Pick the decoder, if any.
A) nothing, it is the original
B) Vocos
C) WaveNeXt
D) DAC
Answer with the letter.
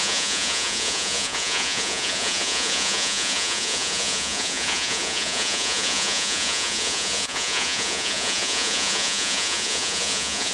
B